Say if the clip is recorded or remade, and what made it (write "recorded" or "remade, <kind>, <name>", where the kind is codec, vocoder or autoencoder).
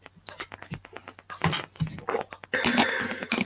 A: recorded